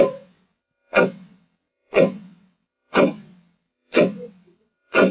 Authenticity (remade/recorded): remade